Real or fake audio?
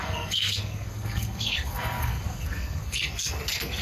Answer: fake